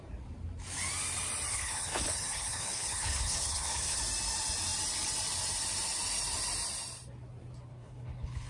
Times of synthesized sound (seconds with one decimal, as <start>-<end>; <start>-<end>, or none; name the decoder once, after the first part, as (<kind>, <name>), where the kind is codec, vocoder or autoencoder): 1.5-4.0 (codec, HILCodec); 7.7-8.5